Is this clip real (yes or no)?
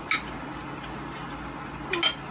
yes